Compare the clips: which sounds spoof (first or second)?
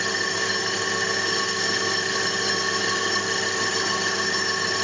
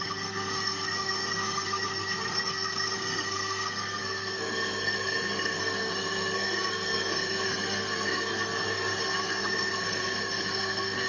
second